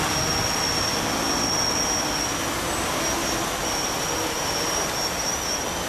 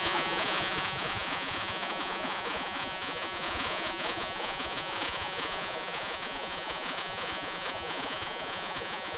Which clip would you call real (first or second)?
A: first